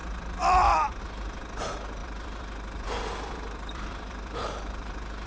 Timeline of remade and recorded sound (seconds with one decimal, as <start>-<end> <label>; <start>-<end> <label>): 0.0-1.0 remade; 1.0-2.0 recorded; 2.0-5.3 remade